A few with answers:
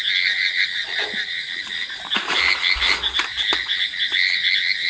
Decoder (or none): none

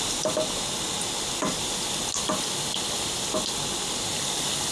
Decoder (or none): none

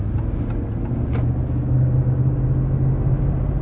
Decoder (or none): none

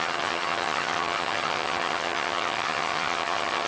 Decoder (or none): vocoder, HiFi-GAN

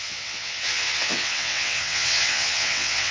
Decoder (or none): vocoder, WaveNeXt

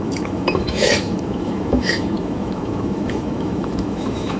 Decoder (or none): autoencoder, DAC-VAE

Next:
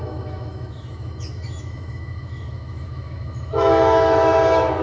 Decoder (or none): autoencoder, DAC-VAE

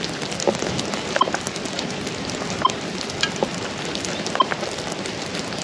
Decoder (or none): none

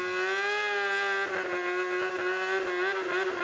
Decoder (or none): none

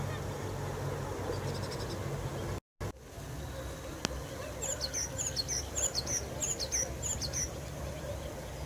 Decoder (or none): none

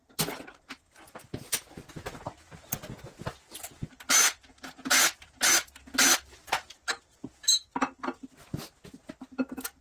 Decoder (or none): none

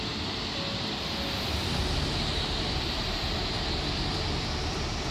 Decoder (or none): none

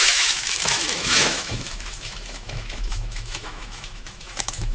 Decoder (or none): autoencoder, DAC-VAE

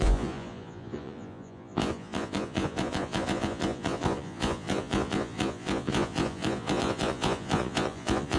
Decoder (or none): vocoder, Vocos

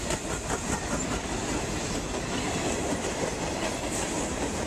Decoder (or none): none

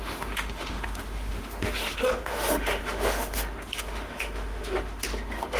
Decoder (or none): autoencoder, DAC-VAE